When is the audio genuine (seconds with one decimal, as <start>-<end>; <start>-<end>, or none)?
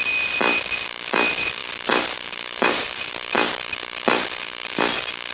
0.0-1.6; 4.8-5.3